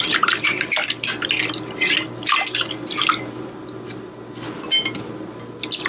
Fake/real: real